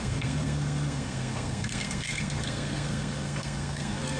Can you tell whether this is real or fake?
fake